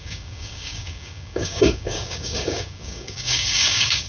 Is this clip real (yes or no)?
no